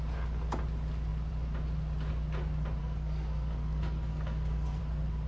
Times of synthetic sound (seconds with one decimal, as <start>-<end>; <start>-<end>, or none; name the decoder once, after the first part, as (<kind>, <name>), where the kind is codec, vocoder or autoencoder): 2.8-4.8 (codec, SNAC)